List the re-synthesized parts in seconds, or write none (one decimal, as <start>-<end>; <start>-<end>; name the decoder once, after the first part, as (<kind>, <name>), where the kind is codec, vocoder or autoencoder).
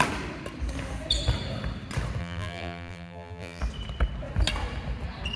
2.2-3.6 (vocoder, BigVGAN v2)